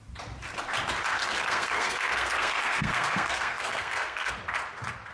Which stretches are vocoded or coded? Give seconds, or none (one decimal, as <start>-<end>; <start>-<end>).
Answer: 1.2-4.3